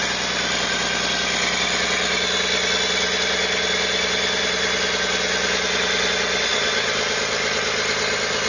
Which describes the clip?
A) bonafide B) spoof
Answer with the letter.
A